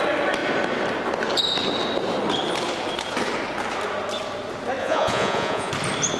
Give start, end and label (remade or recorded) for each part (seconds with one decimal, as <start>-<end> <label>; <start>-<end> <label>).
0.0-4.8 recorded; 4.8-5.7 remade; 5.7-6.2 recorded